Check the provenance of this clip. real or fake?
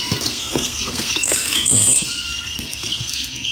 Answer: fake